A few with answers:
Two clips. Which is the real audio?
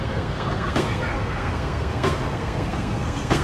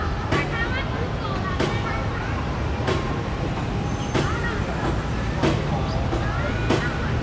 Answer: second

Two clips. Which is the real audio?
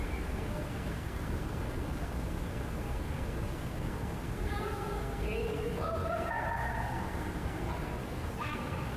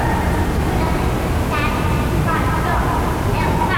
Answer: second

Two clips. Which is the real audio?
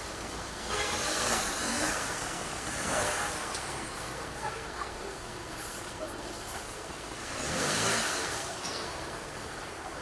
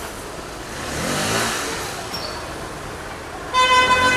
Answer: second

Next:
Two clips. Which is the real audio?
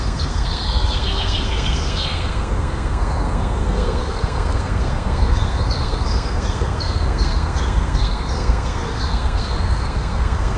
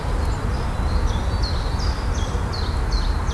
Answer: second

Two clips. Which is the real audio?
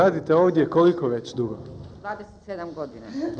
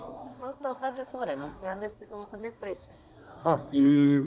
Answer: first